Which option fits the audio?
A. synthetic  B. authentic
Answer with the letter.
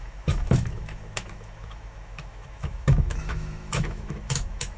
A